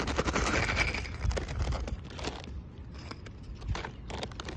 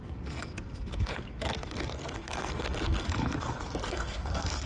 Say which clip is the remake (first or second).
second